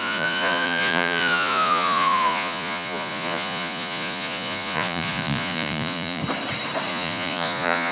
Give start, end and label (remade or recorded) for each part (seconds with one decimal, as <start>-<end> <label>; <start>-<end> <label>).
0.0-6.2 remade; 6.2-6.9 recorded; 6.9-7.9 remade